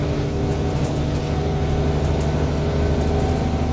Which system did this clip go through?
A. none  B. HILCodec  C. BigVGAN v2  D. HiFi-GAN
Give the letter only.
A